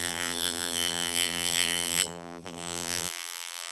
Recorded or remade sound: remade